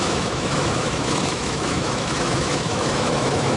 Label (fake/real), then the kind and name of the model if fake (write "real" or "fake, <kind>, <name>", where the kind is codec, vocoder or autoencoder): fake, autoencoder, DAC-VAE